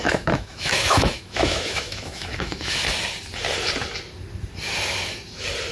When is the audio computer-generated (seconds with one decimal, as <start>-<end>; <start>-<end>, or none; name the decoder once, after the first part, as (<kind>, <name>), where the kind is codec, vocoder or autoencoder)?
0.0-2.8 (autoencoder, DAC-VAE)